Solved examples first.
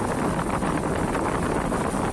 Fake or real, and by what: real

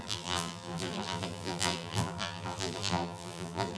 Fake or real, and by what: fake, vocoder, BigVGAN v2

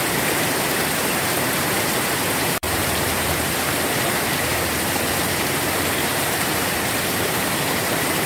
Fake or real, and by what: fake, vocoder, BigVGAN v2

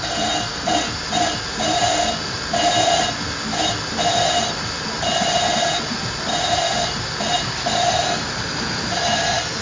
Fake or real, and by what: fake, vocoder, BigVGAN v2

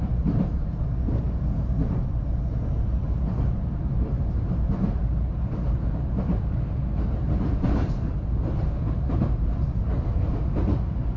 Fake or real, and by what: fake, vocoder, BigVGAN v2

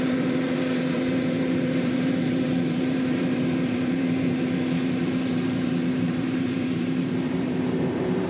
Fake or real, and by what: fake, vocoder, BigVGAN v2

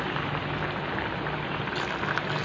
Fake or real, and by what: real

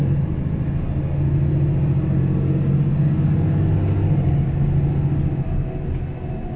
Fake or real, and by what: real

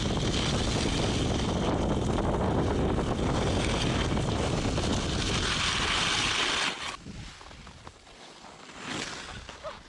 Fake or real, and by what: real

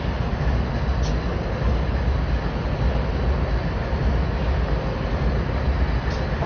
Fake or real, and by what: real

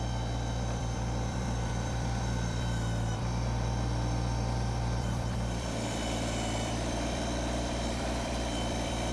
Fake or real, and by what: fake, vocoder, BigVGAN v2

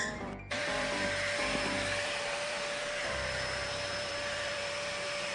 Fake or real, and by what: fake, vocoder, BigVGAN v2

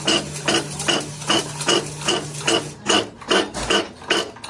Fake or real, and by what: real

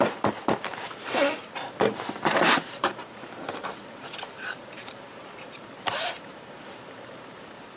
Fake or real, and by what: fake, vocoder, BigVGAN v2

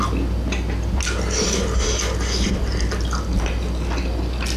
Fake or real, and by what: real